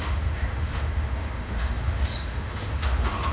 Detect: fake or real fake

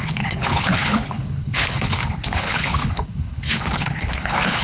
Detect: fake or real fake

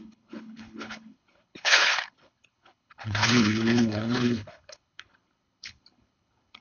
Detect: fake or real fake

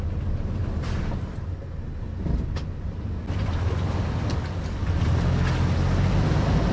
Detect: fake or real real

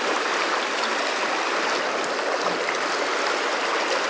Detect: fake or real real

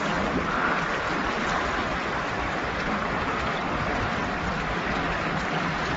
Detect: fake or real real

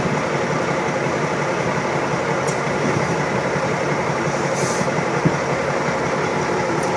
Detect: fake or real fake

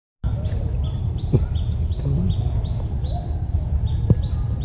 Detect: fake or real real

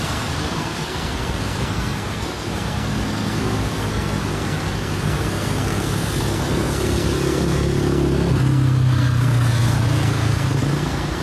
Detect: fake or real fake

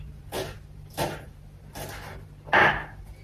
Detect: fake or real real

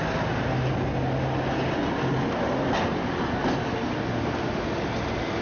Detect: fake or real real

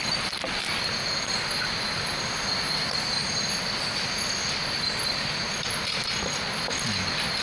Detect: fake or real real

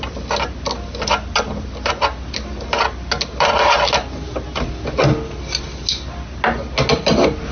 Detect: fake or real real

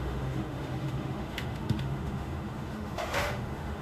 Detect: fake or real fake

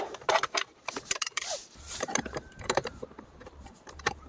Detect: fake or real fake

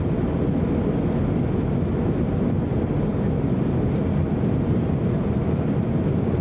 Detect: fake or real real